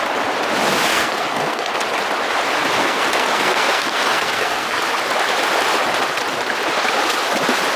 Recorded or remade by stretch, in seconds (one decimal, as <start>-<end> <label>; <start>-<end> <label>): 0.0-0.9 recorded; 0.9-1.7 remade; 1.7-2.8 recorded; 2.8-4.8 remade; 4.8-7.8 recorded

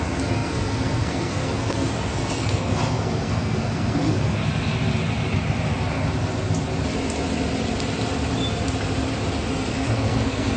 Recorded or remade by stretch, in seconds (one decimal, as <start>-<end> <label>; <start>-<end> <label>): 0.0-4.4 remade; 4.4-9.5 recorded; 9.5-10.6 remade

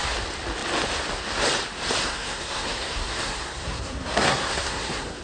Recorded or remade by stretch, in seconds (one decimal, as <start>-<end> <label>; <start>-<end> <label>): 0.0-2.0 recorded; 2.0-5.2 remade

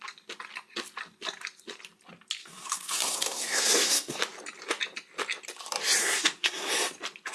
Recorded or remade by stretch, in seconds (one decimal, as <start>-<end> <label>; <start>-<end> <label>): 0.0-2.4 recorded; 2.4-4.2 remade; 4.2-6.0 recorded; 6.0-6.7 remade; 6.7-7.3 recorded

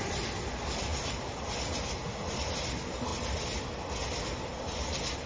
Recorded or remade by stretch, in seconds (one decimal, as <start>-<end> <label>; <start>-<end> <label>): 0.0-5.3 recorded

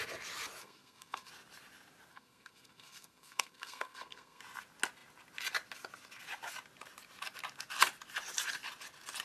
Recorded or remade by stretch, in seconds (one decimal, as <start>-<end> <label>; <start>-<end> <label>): 0.0-0.6 recorded; 0.6-1.3 remade; 1.3-2.1 recorded; 2.1-4.4 remade; 4.4-9.2 recorded